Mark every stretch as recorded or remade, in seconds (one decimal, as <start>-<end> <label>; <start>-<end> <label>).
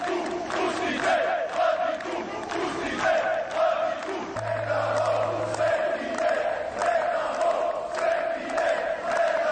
0.0-9.5 recorded